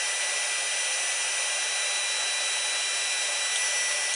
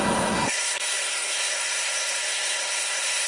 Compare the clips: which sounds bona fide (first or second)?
first